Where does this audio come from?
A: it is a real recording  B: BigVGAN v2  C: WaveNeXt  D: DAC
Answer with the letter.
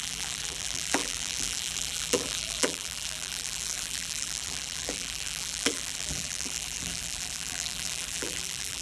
B